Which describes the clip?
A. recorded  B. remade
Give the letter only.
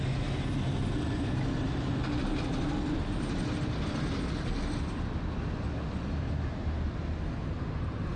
A